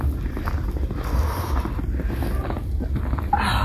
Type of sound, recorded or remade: recorded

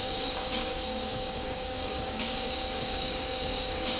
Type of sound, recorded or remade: remade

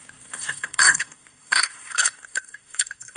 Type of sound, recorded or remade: remade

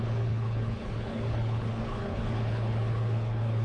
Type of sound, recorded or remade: remade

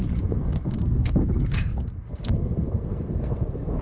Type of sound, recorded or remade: remade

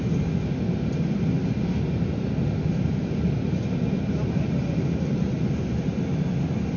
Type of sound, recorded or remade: recorded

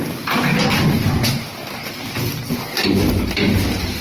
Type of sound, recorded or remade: recorded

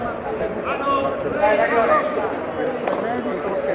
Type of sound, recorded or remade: recorded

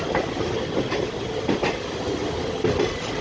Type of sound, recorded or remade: recorded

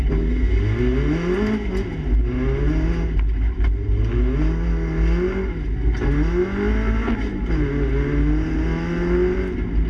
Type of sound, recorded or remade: recorded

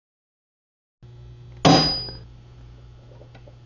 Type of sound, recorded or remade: recorded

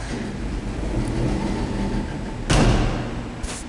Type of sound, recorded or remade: recorded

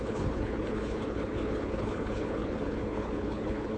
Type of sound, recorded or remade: remade